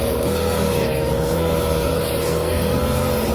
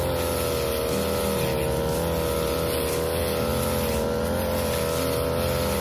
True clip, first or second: second